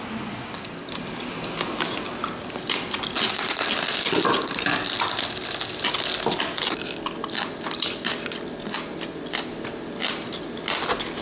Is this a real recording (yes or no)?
yes